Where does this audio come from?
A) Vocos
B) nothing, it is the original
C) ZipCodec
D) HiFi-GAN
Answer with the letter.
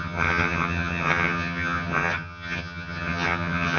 D